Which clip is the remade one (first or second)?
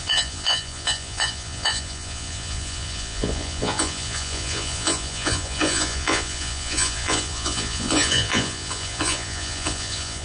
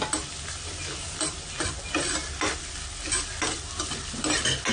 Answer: first